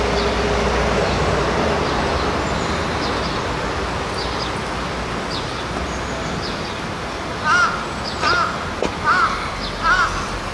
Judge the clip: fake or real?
real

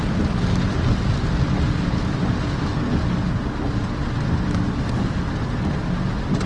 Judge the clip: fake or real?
real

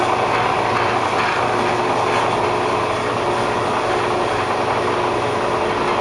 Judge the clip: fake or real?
real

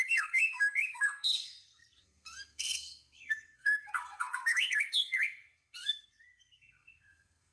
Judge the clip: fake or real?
fake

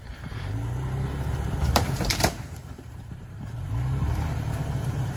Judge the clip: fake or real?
fake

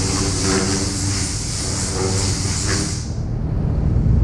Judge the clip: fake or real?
real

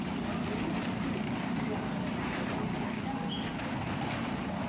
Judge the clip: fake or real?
real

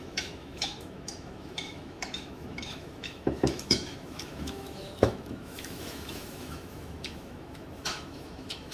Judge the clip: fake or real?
fake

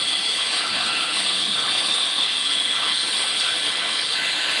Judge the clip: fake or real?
fake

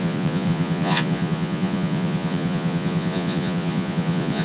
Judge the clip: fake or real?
fake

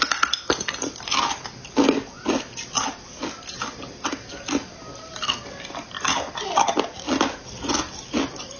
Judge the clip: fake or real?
real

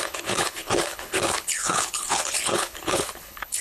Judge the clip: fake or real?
fake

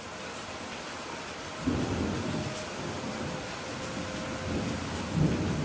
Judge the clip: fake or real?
fake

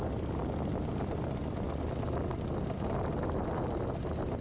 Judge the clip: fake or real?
real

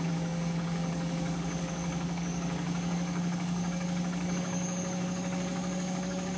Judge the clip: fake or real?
fake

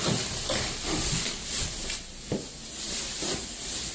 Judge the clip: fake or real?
real